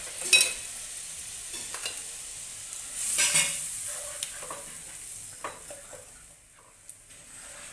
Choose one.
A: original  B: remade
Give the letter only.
A